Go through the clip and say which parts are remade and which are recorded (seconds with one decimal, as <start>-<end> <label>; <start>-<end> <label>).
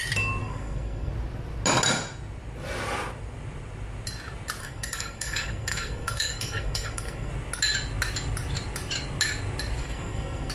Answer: 0.0-0.4 recorded; 0.4-1.1 remade; 1.1-4.6 recorded; 4.6-7.3 remade; 7.3-9.8 recorded; 9.8-10.5 remade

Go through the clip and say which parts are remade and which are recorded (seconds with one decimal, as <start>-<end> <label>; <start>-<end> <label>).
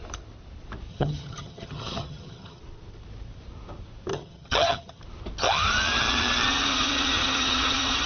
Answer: 0.0-0.9 recorded; 0.9-2.6 remade; 2.6-4.1 recorded; 4.1-5.0 remade; 5.0-5.4 recorded; 5.4-8.1 remade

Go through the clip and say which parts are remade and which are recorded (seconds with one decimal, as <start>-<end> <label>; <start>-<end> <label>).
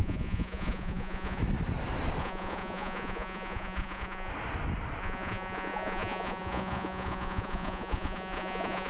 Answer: 0.0-1.4 remade; 1.4-2.2 recorded; 2.2-4.3 remade; 4.3-5.0 recorded; 5.0-8.9 remade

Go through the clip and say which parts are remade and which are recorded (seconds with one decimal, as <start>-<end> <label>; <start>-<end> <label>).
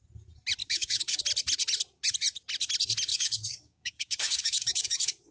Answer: 0.0-0.6 recorded; 0.6-1.2 remade; 1.2-3.1 recorded; 3.1-5.3 remade